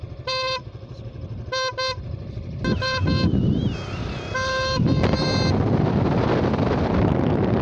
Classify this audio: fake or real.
real